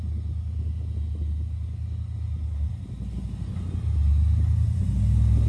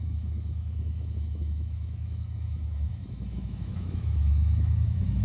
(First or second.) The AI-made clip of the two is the second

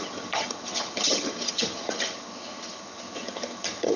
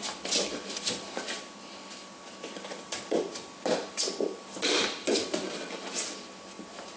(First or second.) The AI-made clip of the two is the first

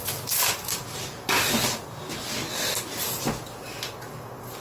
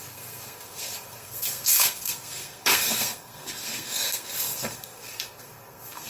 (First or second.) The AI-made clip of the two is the second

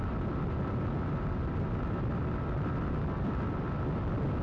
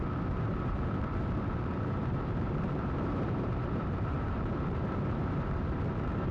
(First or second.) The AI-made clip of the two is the second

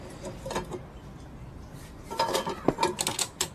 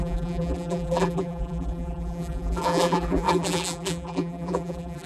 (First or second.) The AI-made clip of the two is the second